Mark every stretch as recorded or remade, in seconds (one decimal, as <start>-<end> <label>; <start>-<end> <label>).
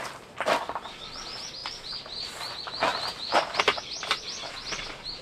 0.0-5.2 recorded